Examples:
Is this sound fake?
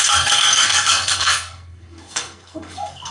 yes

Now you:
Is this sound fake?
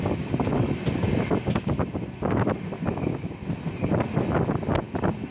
no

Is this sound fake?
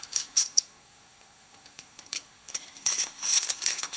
yes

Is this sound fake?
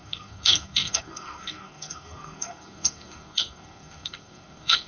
yes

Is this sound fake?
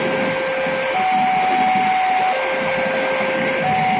no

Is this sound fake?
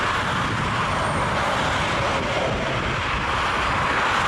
no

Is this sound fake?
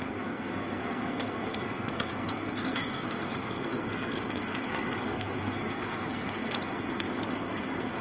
yes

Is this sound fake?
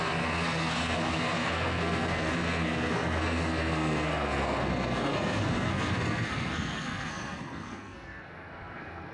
yes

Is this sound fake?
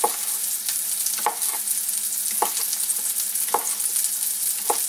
no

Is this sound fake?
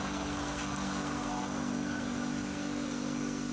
yes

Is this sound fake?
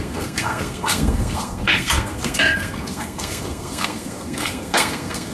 yes